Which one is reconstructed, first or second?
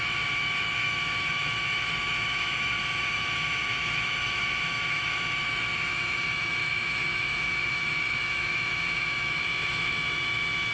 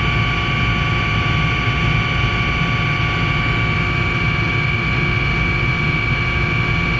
first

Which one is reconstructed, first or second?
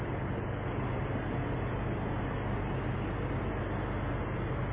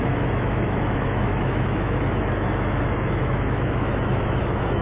second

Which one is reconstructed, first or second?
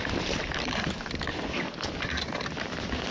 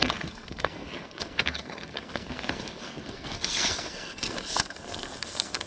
second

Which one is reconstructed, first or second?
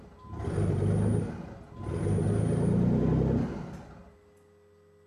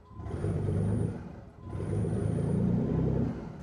second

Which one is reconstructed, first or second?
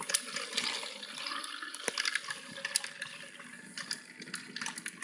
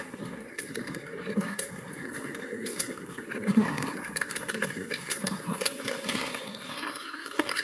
second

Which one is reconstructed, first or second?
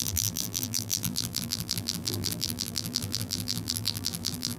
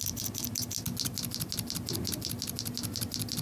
first